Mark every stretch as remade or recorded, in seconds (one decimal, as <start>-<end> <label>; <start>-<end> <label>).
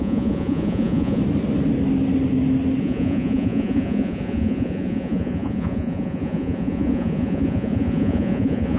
0.0-1.2 remade; 1.2-2.8 recorded; 2.8-8.8 remade